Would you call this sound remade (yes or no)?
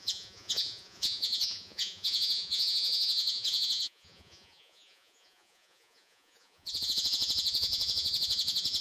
yes